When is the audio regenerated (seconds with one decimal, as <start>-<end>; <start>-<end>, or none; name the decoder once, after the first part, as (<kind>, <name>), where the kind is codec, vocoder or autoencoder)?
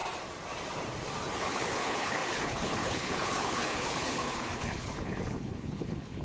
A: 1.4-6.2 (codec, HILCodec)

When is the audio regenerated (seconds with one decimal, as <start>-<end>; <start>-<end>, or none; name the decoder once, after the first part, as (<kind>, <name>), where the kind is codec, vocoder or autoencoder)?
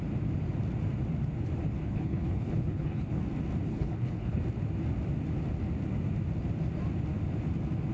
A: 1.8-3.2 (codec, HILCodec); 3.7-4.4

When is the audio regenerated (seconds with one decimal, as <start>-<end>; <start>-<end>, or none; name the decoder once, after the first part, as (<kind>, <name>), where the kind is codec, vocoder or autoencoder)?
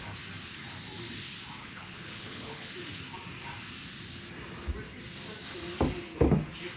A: 1.6-2.7 (codec, HILCodec)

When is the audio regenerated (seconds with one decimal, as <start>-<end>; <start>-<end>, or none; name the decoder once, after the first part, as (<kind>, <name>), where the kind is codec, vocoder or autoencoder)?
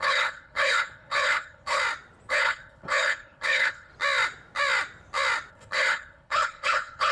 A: 0.0-1.8 (codec, HILCodec); 2.3-3.9; 5.5-7.1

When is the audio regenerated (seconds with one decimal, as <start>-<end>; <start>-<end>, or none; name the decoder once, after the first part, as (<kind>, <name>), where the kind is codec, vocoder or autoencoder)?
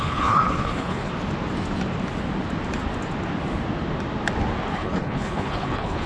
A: 0.0-1.1 (codec, HILCodec); 4.7-6.1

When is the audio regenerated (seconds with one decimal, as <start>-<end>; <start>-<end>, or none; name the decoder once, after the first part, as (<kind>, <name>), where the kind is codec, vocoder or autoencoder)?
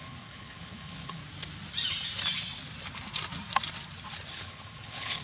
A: 0.0-1.2 (codec, HILCodec); 4.3-5.2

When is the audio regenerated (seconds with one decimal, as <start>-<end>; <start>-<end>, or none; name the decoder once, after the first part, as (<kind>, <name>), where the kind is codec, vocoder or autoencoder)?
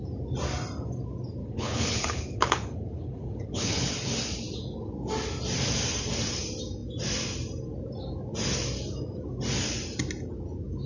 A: 1.4-3.9 (codec, HILCodec)